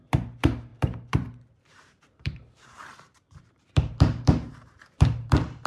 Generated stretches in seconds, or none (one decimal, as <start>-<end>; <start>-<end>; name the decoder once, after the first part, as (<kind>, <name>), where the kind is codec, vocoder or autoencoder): 0.0-5.7 (vocoder, BigVGAN v2)